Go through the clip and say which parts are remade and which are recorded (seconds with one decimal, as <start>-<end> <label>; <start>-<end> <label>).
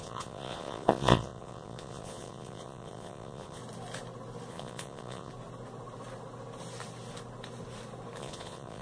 0.0-3.6 remade; 3.6-4.5 recorded; 4.5-5.3 remade; 5.3-8.2 recorded; 8.2-8.8 remade